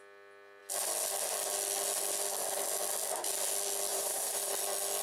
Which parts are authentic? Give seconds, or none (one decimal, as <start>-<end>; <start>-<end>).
0.0-3.9; 4.5-5.0